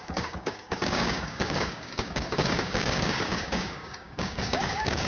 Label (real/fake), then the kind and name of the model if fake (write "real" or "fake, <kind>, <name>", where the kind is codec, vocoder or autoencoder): fake, codec, DAC